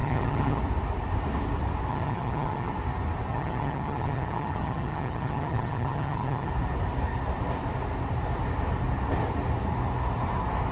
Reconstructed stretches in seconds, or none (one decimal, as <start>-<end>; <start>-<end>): 0.0-0.6; 1.9-2.7; 3.3-6.5